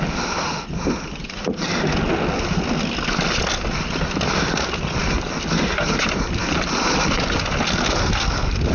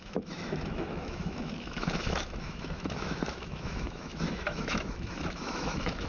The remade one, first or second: second